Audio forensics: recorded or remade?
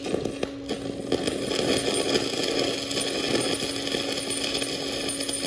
recorded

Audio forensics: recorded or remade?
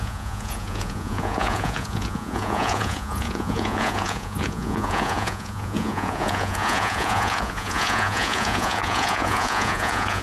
remade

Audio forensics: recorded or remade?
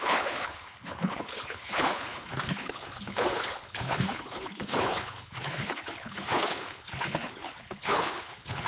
remade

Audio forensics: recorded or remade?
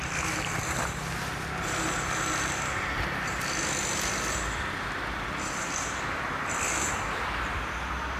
remade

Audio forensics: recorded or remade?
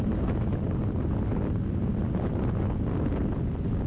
recorded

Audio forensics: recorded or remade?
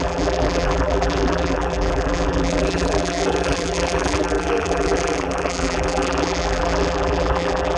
remade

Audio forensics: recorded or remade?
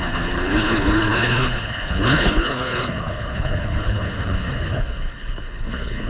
remade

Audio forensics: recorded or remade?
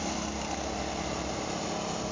remade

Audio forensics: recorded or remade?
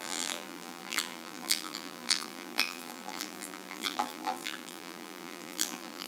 remade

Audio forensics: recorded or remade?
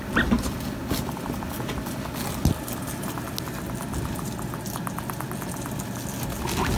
recorded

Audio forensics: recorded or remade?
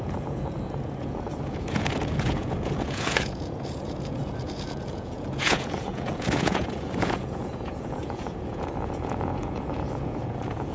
remade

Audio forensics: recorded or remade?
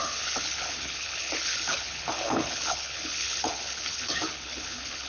remade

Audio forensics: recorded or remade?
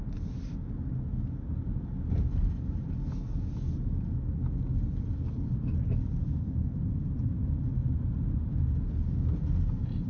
recorded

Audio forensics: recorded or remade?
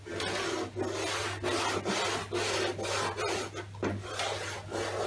recorded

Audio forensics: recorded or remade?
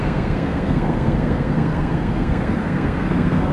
remade